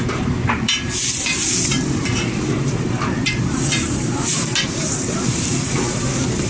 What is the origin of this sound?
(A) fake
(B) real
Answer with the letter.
A